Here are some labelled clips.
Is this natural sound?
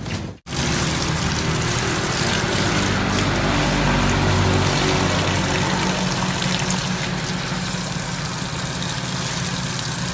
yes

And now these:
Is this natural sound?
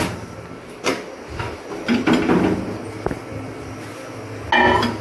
yes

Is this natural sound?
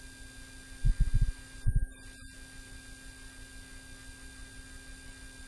yes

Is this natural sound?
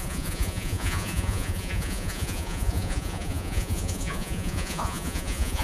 no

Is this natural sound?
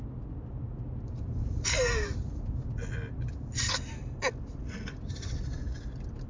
yes